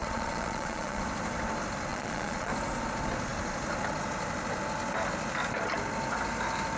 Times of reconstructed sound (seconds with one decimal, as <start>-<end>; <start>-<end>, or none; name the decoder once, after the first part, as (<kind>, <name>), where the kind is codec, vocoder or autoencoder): 0.0-1.0 (vocoder, Vocos); 1.9-2.5